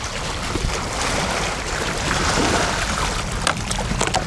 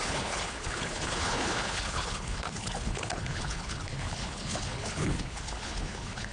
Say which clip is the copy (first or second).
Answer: second